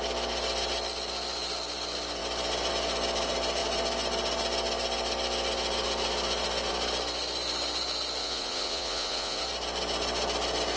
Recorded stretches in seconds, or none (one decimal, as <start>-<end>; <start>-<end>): 0.0-8.2; 9.4-10.8

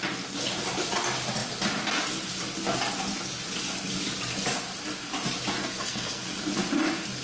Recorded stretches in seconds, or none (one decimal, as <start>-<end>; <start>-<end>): 0.0-5.6; 6.4-7.2

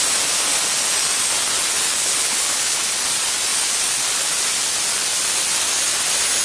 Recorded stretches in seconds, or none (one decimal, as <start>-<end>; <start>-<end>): 0.0-1.8; 2.8-6.4